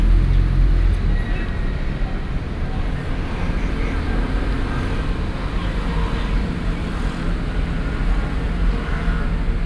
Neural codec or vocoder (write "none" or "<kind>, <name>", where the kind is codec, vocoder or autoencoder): none